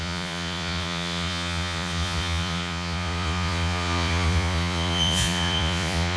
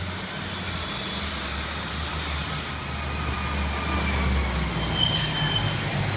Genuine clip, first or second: second